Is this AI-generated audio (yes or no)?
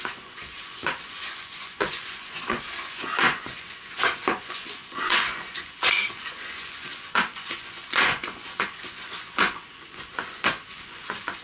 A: yes